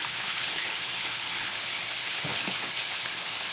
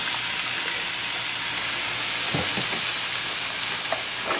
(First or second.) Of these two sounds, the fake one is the first